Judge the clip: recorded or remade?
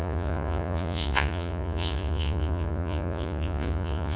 remade